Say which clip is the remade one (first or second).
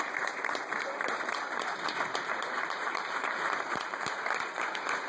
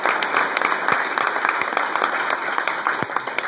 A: first